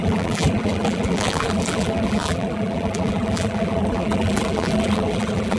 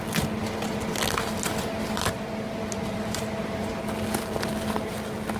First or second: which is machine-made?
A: first